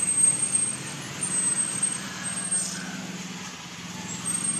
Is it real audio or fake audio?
real